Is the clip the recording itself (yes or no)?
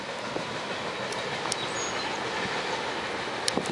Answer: yes